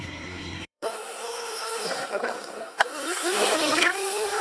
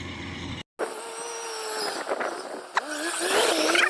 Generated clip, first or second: first